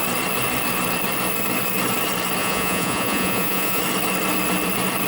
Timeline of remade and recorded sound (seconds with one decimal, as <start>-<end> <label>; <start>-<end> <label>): 0.0-2.4 recorded; 2.4-3.8 remade; 3.8-5.1 recorded